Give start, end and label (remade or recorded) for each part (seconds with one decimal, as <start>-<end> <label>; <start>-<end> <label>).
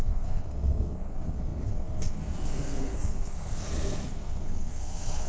0.0-5.3 remade